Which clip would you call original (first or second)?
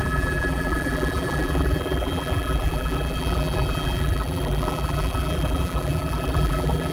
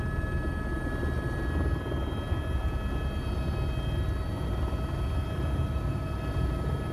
second